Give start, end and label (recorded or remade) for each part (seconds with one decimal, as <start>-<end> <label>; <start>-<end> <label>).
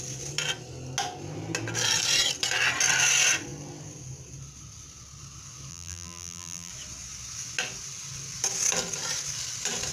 0.0-5.7 recorded; 5.7-6.7 remade; 6.7-9.9 recorded